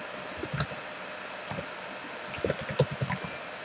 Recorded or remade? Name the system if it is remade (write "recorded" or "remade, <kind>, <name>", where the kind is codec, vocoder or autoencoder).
recorded